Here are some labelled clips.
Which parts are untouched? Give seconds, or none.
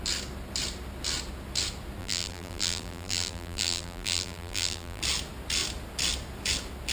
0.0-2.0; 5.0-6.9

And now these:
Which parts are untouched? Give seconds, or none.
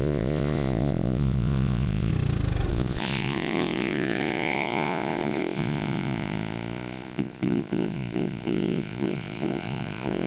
2.1-2.7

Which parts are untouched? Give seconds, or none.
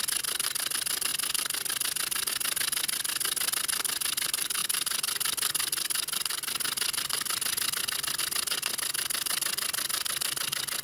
0.0-10.8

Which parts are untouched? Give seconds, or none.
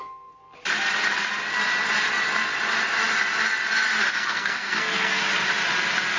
0.4-4.1; 5.2-6.2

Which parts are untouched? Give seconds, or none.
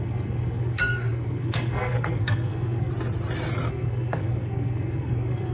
2.9-3.7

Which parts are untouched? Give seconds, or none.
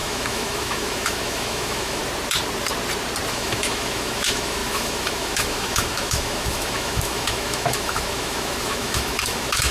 2.0-3.3